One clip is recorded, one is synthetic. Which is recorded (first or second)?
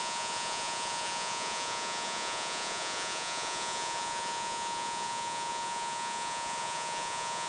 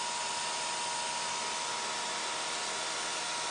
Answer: second